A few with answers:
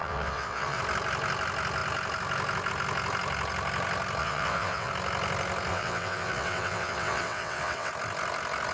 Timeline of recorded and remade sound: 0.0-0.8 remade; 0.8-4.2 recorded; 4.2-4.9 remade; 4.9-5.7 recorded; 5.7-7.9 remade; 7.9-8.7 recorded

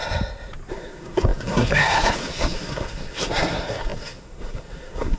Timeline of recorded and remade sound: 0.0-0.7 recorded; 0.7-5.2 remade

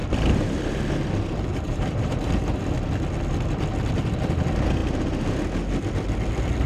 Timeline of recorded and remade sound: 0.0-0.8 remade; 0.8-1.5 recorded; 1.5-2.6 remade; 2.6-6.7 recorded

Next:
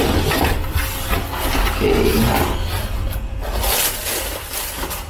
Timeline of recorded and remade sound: 0.0-5.1 recorded

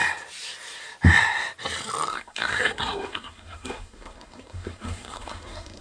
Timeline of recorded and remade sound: 0.0-2.1 recorded; 2.1-5.8 remade

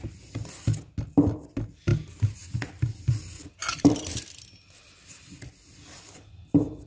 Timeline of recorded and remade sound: 0.0-6.9 recorded

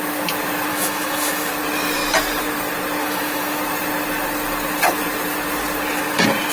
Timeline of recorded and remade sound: 0.0-0.7 recorded; 0.7-1.5 remade; 1.5-3.0 recorded; 3.0-3.6 remade; 3.6-6.5 recorded